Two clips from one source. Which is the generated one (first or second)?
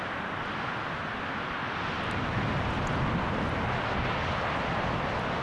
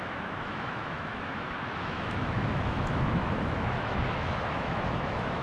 second